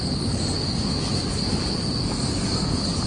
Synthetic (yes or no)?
no